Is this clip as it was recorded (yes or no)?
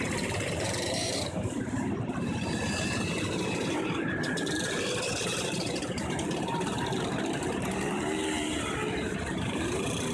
no